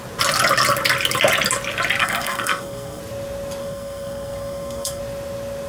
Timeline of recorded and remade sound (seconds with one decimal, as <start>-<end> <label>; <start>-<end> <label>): 0.0-2.0 recorded; 2.0-3.0 remade; 3.0-3.6 recorded; 3.6-5.0 remade; 5.0-5.7 recorded